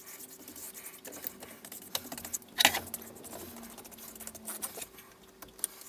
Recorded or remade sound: recorded